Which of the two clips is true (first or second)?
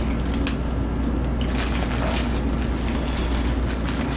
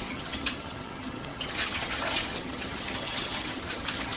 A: first